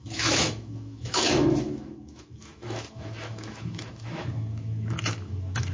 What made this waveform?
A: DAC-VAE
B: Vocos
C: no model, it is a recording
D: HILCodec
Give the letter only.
A